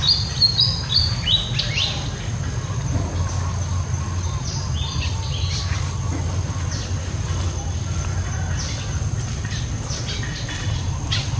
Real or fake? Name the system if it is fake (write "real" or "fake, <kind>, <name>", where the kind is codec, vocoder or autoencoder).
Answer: real